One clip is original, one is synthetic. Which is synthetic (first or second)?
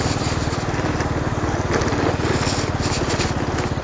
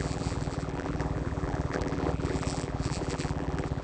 second